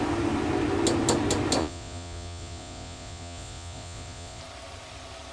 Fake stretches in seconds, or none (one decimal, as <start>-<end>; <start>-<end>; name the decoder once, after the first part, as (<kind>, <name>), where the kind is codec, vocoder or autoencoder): 1.6-4.4 (vocoder, Vocos)